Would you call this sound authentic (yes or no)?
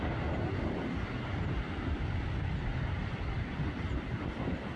yes